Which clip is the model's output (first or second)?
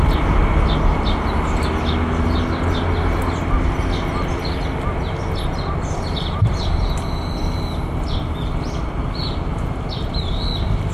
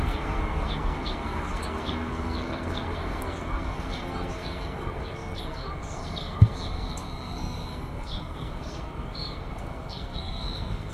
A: second